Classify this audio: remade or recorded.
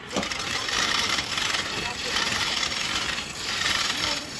remade